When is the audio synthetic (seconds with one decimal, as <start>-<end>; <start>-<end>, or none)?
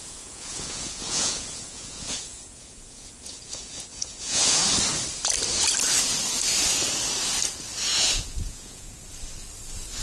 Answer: 0.0-4.6; 7.9-8.9